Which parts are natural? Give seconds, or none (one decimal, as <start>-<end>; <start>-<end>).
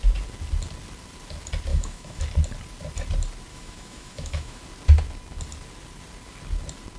0.0-1.7; 2.2-3.5; 4.6-7.0